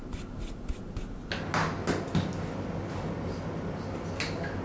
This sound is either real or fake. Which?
real